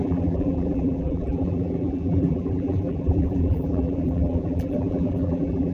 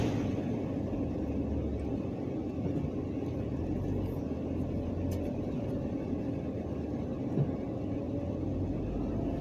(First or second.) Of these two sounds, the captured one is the second